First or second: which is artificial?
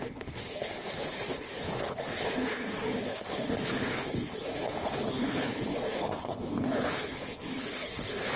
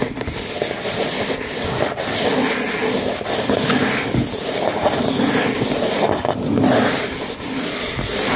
first